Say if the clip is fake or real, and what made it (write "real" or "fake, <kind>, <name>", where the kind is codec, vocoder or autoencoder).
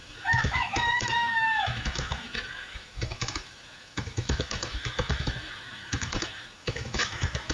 fake, autoencoder, DAC-VAE